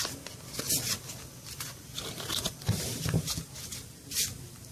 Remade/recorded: recorded